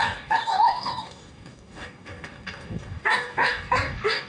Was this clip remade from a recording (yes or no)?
yes